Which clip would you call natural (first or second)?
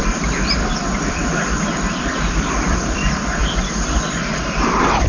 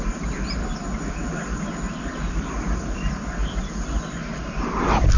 second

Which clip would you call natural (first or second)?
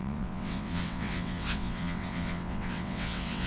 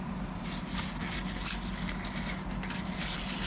second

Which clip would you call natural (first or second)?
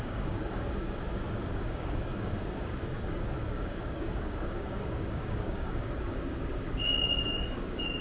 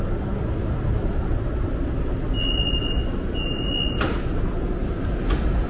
second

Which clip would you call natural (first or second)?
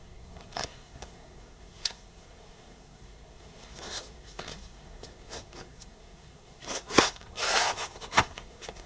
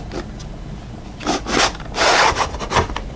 second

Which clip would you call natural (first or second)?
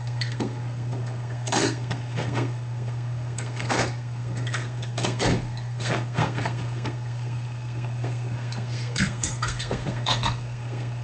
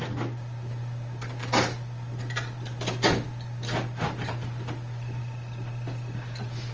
second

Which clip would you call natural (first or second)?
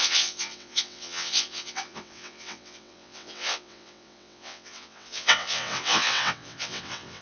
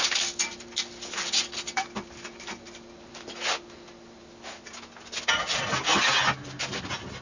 second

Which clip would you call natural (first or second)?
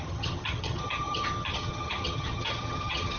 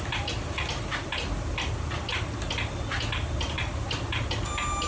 second